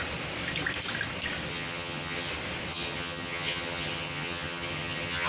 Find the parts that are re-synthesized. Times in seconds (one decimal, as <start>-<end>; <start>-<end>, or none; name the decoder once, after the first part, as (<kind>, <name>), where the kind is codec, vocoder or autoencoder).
1.5-2.3 (vocoder, HiFi-GAN); 2.7-5.3